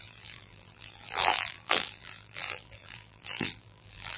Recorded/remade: remade